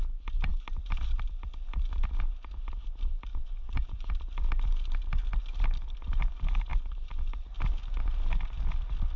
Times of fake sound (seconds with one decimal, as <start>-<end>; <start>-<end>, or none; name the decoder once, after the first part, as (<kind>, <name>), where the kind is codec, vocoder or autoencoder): 3.3-4.1 (vocoder, Vocos)